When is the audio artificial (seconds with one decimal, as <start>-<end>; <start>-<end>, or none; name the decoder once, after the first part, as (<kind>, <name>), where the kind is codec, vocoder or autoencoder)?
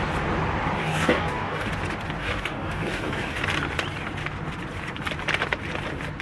0.8-1.7 (codec, DAC); 2.2-3.4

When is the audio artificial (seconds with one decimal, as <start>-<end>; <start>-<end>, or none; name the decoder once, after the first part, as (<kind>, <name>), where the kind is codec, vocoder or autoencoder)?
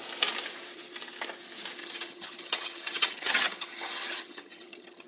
1.8-5.1 (vocoder, HiFi-GAN)